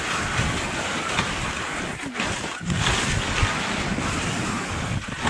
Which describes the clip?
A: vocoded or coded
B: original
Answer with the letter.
B